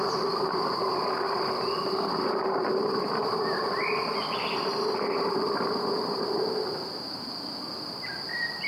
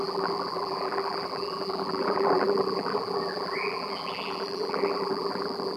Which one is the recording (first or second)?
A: first